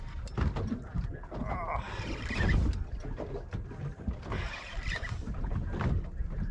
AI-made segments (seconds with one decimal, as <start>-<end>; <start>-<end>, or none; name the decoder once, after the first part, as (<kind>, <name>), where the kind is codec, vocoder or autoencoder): none